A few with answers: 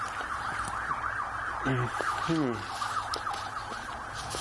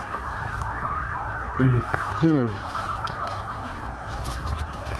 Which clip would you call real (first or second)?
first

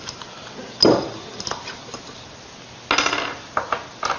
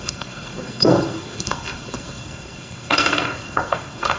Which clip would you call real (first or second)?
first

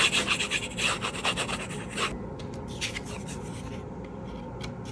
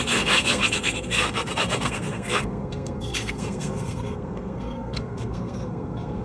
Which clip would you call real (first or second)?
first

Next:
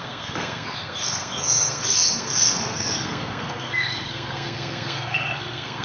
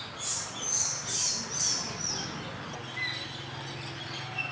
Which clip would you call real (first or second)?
second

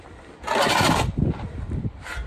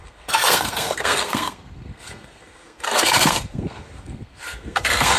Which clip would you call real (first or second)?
first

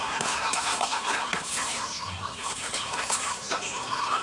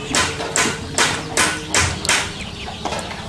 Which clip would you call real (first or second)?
second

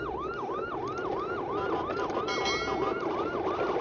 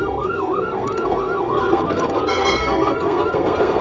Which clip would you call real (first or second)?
first